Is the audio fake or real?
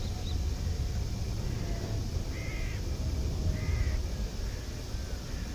real